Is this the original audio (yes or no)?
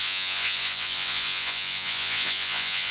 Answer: no